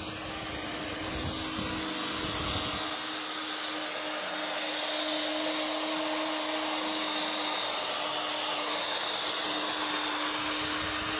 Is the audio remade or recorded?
recorded